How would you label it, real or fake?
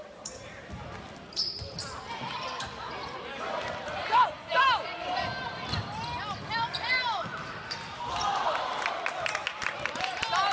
real